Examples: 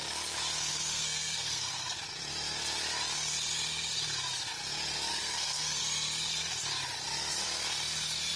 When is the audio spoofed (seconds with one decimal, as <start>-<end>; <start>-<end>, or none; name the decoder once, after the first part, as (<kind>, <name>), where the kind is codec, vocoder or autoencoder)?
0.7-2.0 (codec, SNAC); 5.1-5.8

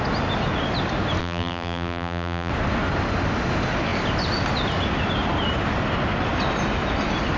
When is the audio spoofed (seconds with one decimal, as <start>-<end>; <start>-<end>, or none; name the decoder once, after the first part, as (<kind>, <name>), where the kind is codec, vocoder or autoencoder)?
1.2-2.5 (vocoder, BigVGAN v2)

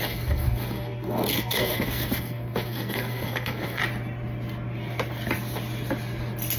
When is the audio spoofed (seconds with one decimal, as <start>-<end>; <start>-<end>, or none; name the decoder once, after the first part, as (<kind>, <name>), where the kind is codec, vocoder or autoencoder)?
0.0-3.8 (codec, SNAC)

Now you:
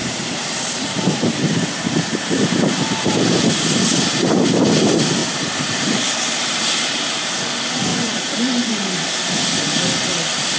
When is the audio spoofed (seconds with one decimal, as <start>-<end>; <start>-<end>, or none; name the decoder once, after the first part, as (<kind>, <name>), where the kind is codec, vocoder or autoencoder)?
0.0-3.5 (vocoder, BigVGAN v2); 5.2-7.1; 7.9-8.7